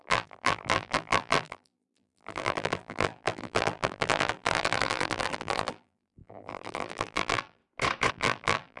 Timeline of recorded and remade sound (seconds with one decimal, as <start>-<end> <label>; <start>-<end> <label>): 0.0-7.6 remade; 7.6-8.1 recorded; 8.1-8.8 remade